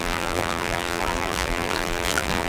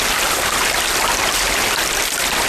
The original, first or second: second